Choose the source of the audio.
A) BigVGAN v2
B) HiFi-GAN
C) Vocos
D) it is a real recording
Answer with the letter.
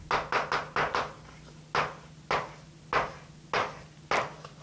D